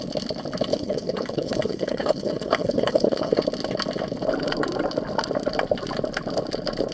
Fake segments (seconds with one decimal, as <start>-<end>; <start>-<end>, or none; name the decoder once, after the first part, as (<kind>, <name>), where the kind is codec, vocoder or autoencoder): 0.7-3.3 (codec, HILCodec)